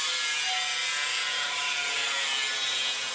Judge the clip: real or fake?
real